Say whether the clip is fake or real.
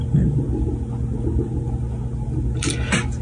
real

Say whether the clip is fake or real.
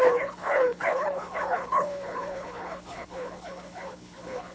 fake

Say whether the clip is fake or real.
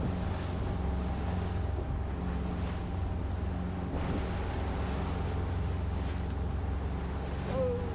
real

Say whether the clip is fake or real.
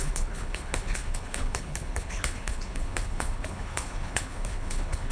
fake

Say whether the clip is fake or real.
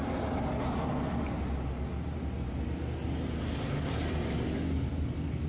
real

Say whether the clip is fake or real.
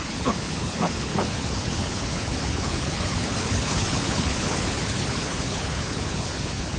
fake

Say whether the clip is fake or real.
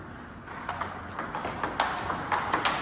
real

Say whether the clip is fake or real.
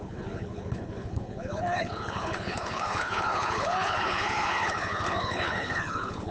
fake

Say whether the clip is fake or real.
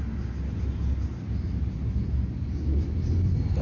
real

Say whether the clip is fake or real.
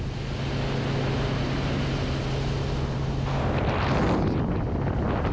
real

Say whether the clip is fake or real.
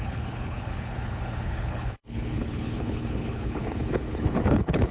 fake